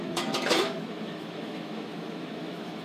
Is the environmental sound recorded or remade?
remade